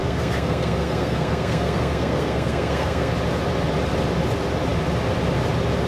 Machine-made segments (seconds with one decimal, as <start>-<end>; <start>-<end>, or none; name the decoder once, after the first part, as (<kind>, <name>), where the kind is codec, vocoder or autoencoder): 0.0-3.1 (codec, SNAC)